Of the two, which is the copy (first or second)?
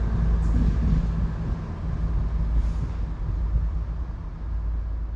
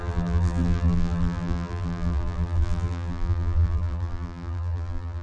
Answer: second